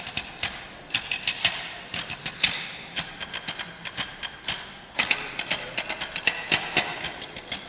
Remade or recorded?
recorded